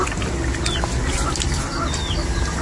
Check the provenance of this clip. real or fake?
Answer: real